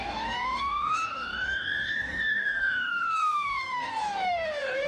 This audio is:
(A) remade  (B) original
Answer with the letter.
A